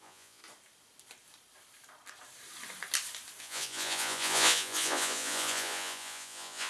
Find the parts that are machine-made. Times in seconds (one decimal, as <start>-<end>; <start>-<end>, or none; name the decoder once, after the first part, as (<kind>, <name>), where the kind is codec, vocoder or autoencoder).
0.0-0.4 (vocoder, Vocos); 3.4-6.7